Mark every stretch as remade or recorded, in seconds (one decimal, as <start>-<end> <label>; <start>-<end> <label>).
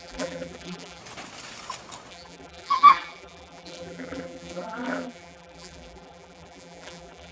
0.0-1.0 remade; 1.0-2.1 recorded; 2.1-7.3 remade